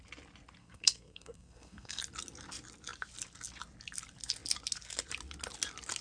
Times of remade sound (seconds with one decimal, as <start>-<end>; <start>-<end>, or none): 0.6-2.0